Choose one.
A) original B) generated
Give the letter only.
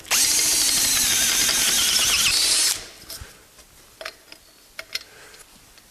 A